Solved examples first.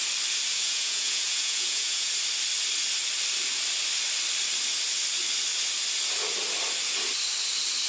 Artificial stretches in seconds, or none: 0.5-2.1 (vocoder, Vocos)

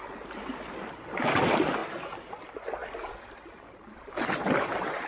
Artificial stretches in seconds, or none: none